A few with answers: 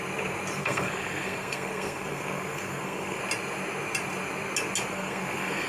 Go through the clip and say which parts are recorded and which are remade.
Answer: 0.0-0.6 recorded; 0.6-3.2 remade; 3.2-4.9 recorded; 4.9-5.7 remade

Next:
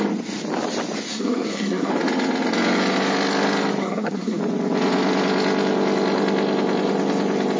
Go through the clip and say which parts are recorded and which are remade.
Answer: 0.0-1.1 recorded; 1.1-1.9 remade; 1.9-3.8 recorded; 3.8-4.4 remade; 4.4-7.6 recorded